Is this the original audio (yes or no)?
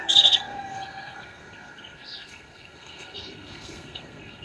no